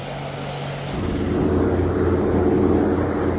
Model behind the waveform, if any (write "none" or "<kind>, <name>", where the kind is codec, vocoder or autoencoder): none